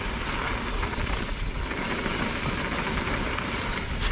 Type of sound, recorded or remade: recorded